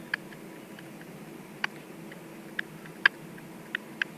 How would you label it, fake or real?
real